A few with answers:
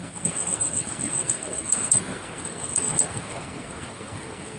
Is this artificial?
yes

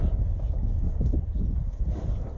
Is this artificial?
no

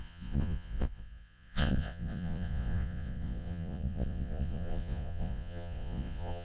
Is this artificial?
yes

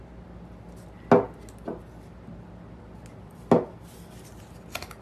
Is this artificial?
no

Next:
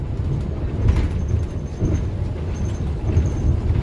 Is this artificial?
no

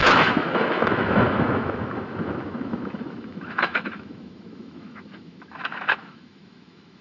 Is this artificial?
yes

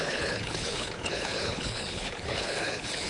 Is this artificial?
yes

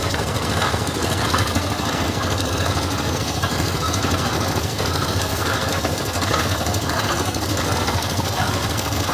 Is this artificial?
yes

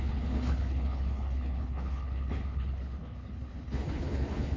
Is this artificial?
yes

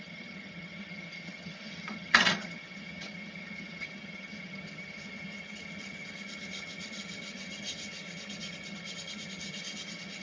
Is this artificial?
yes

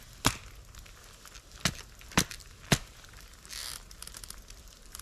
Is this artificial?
no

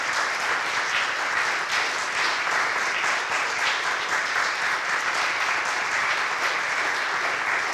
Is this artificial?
no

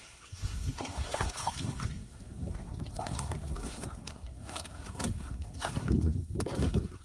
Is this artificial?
yes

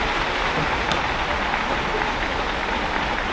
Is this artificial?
no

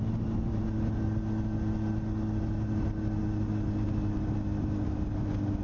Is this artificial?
no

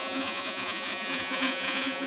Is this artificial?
yes